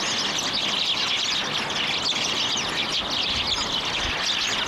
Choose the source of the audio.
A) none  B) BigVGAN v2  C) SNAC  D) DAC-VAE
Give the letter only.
A